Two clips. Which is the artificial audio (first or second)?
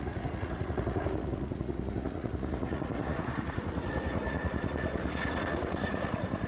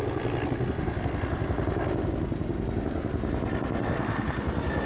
first